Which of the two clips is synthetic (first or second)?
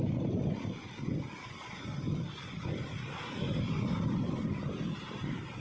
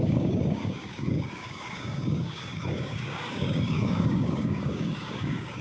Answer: second